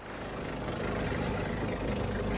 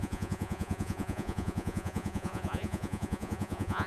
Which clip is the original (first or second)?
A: first